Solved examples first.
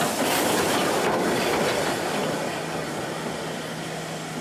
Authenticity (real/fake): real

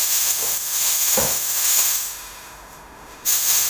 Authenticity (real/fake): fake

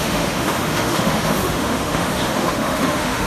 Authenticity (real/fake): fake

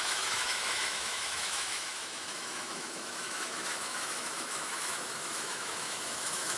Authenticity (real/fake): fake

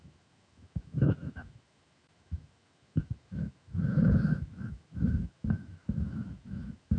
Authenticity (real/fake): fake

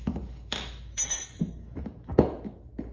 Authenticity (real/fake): fake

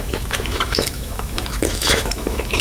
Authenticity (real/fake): fake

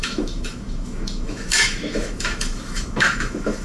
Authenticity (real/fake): fake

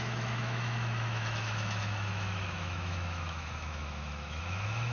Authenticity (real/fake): fake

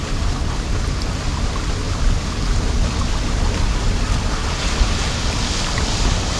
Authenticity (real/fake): real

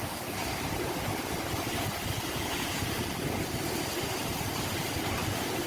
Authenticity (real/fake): real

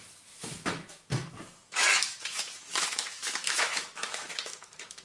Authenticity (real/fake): fake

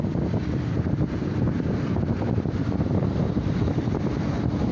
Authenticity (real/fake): real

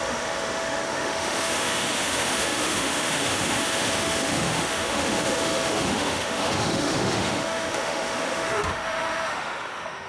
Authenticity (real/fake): fake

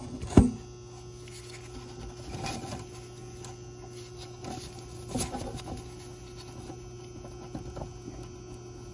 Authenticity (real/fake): real